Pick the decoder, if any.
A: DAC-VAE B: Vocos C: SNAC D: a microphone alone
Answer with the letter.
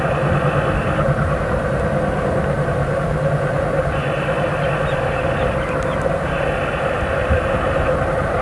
D